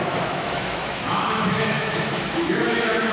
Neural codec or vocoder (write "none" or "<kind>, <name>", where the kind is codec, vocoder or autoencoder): autoencoder, DAC-VAE